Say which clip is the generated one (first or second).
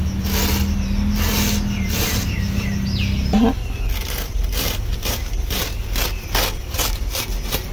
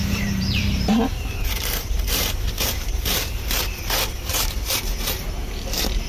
second